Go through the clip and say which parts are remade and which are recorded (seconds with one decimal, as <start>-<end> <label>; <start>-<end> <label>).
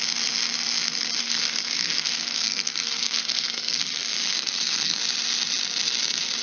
0.0-1.2 recorded; 1.2-3.8 remade; 3.8-4.3 recorded; 4.3-5.0 remade; 5.0-6.4 recorded